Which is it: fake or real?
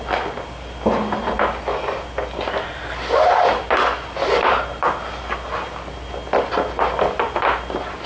real